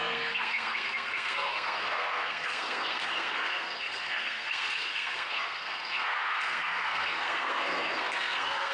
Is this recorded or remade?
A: remade